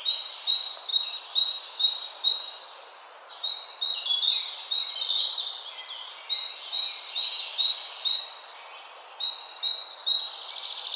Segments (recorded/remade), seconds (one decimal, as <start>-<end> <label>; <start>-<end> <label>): 0.0-11.0 recorded